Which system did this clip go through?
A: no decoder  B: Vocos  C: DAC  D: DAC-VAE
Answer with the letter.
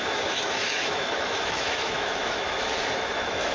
D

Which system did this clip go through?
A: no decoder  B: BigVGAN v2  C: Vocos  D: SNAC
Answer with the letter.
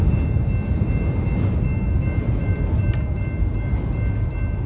A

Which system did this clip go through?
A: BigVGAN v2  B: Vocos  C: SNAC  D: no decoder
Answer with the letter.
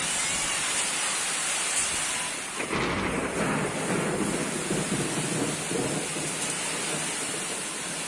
D